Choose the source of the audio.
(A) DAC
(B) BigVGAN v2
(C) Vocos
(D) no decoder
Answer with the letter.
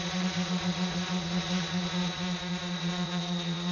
C